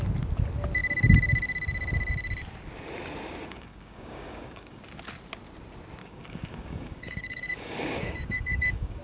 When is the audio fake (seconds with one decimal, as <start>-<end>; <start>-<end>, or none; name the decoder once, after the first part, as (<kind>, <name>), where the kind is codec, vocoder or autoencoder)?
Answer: 3.4-4.8 (codec, DAC); 6.0-9.0